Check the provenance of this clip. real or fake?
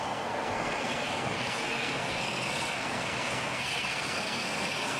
fake